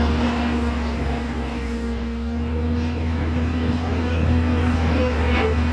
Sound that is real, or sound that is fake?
fake